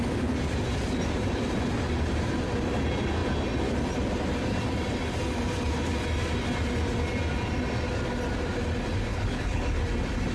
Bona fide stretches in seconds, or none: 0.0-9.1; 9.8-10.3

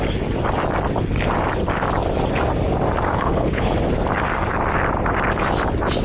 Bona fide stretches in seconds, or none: 0.0-3.1; 3.7-6.0

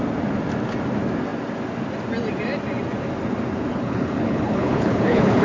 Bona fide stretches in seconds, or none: 0.0-3.7

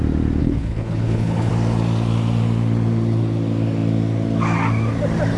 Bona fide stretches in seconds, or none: 0.0-0.4; 1.5-5.4

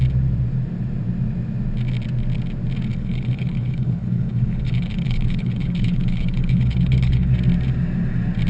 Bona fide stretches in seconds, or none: 0.0-2.9; 7.3-8.5

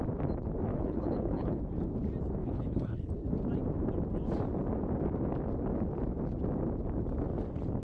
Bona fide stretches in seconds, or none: 0.0-0.7; 1.6-2.4; 3.1-7.8

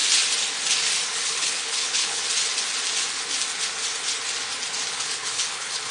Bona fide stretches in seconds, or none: 0.0-1.1; 2.2-4.9

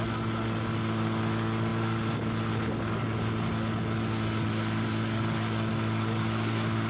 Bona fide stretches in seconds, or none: 0.0-6.9